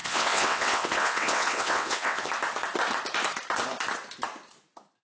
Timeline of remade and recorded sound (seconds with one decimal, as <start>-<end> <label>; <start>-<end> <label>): 0.0-2.3 remade; 2.3-5.0 recorded